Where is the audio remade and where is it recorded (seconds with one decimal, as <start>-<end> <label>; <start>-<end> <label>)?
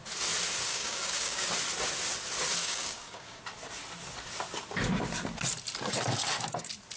0.0-0.7 recorded; 0.7-1.5 remade; 1.5-2.6 recorded; 2.6-3.4 remade; 3.4-7.0 recorded